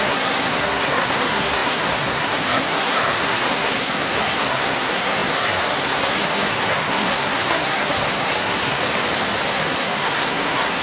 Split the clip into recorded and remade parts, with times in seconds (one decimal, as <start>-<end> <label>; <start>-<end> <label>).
0.0-8.8 remade; 8.8-9.5 recorded; 9.5-10.8 remade